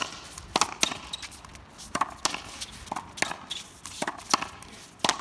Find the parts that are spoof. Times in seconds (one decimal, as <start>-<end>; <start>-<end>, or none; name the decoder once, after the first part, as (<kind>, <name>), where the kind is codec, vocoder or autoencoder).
none